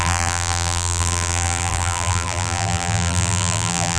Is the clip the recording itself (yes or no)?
no